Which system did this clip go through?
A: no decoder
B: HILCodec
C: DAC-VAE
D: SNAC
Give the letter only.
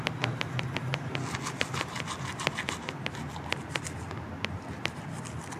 A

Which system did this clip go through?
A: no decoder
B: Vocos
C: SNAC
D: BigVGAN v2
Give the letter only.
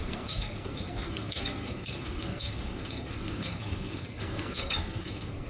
C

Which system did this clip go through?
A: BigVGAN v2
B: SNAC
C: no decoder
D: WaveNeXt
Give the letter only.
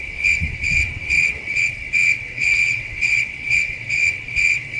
D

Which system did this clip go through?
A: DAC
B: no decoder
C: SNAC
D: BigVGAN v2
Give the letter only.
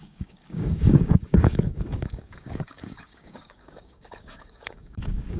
A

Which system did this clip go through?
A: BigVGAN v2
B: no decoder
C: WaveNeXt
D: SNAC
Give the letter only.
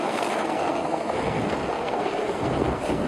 D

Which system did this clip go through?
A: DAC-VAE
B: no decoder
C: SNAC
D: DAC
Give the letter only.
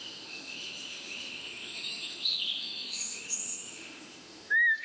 A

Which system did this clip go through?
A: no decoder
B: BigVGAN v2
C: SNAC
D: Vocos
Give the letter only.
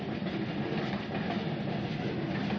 A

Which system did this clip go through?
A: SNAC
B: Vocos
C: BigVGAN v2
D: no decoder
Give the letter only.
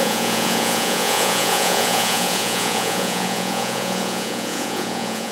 B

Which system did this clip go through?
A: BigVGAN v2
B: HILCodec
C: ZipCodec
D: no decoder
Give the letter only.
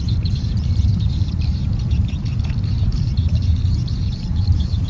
A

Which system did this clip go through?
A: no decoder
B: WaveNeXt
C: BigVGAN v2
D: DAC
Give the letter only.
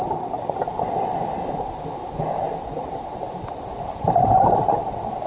A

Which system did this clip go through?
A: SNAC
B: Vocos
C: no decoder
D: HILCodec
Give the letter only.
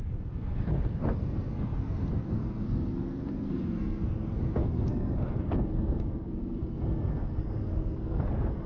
A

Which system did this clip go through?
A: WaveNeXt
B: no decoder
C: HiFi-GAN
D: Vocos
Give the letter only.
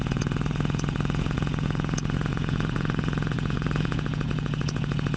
D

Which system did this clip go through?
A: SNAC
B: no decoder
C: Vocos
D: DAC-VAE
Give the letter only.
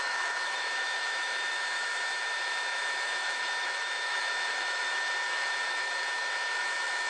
D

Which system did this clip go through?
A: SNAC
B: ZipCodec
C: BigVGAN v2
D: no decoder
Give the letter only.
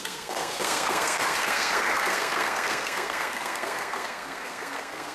A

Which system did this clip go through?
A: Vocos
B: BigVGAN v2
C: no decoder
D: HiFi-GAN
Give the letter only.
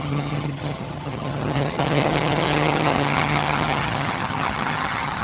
D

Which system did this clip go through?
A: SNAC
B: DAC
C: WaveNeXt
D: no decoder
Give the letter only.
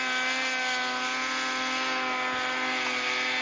D